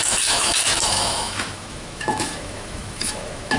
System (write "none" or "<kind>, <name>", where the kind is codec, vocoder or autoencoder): autoencoder, DAC-VAE